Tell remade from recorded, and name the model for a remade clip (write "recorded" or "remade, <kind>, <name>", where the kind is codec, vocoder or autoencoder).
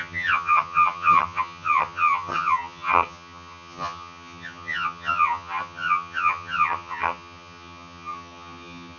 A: remade, vocoder, HiFi-GAN